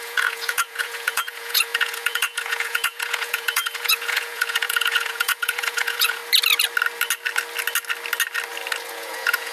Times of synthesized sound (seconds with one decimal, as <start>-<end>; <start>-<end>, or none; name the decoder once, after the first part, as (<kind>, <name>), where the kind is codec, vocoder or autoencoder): 0.0-6.2 (vocoder, Vocos); 8.9-9.5

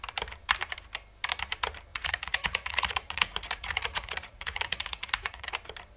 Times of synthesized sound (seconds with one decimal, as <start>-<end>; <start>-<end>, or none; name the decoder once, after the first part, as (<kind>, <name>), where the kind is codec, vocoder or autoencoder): 1.9-5.5 (vocoder, Vocos)